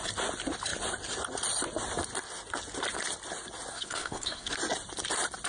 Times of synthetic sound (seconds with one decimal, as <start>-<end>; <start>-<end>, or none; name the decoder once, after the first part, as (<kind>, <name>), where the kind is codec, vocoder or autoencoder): 3.7-4.5 (codec, SNAC)